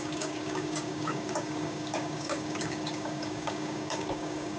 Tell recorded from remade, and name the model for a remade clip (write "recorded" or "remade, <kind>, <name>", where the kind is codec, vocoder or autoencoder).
remade, codec, DAC